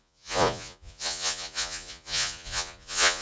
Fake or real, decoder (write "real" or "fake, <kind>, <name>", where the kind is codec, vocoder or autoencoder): fake, vocoder, Vocos